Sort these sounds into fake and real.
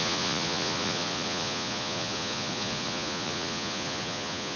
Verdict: fake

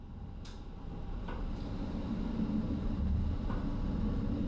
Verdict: real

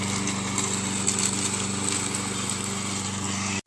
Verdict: real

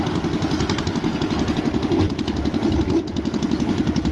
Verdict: real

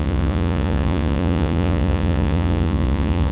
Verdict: fake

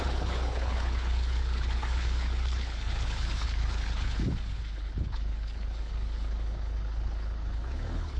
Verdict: fake